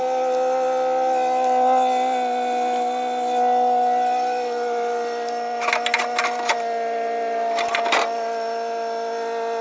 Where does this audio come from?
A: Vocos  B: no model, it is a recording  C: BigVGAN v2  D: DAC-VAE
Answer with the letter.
B